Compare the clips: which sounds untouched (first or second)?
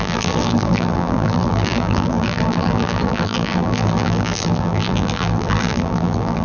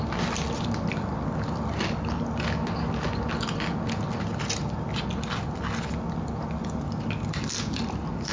second